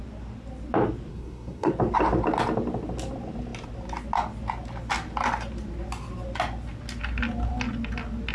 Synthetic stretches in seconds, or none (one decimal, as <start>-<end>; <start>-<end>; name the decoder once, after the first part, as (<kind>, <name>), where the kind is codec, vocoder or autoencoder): 1.1-1.7 (codec, SNAC)